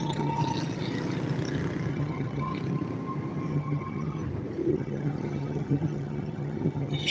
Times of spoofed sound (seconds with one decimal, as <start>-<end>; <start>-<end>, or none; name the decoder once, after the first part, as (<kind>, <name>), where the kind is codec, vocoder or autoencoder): 0.0-0.4 (vocoder, HiFi-GAN); 1.9-2.5; 3.5-4.2; 4.7-7.1